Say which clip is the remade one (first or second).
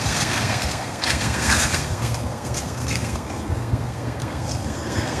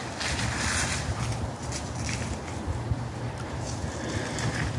first